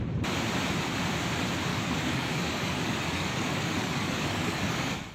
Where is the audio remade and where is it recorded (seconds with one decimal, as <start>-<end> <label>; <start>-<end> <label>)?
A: 0.0-1.7 recorded; 1.7-5.1 remade